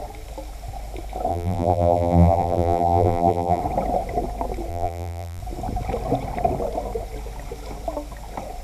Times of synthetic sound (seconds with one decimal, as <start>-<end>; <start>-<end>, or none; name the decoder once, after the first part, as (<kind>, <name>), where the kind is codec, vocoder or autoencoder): 1.3-3.6 (vocoder, BigVGAN v2); 4.7-5.4